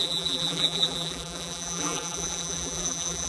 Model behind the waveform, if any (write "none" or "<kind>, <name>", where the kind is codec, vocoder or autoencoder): vocoder, BigVGAN v2